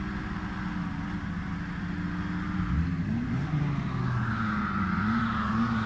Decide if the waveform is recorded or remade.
recorded